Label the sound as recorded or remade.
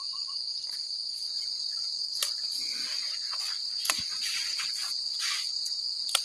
recorded